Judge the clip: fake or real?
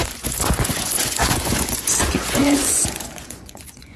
fake